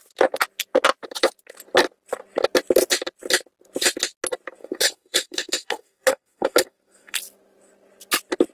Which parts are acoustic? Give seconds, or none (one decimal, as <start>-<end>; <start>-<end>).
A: 0.0-4.6; 7.2-8.5